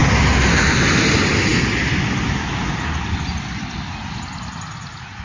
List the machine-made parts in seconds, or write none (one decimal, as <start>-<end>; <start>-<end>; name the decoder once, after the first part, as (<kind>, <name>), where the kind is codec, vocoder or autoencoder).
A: none